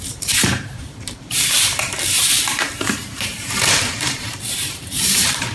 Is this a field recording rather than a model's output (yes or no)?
no